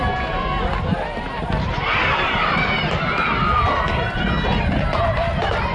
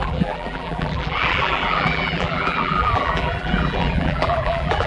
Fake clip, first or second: second